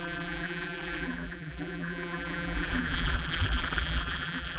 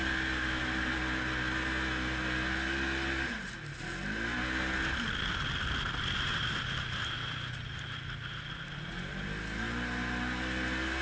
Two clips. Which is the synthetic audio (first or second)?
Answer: first